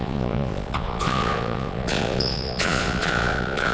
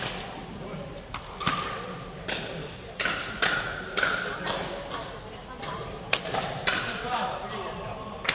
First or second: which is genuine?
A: second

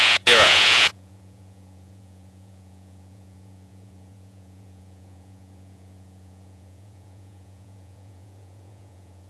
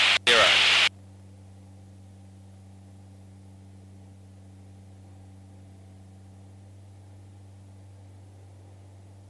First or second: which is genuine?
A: second